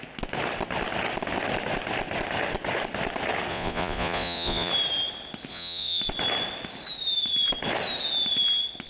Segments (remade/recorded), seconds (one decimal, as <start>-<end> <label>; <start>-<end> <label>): 0.0-3.5 recorded; 3.5-4.7 remade; 4.7-5.5 recorded; 5.5-6.0 remade; 6.0-8.9 recorded